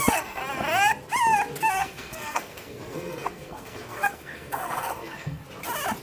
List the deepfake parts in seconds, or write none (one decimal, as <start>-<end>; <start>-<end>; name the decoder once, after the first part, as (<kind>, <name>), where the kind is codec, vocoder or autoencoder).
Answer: 0.0-0.4 (codec, SNAC); 1.7-5.4